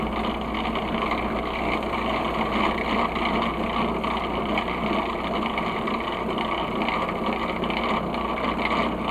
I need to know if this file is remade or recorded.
recorded